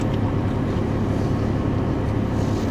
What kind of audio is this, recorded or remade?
recorded